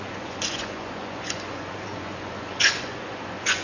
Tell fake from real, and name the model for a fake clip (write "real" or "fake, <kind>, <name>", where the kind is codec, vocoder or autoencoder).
fake, vocoder, Vocos